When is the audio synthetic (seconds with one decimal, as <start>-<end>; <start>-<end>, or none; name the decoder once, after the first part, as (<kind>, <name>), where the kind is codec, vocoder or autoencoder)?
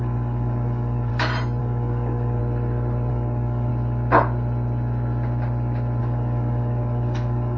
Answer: 0.0-1.1 (codec, DAC); 1.6-2.4; 3.1-3.7; 6.0-7.6